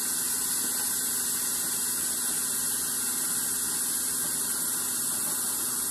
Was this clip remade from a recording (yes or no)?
no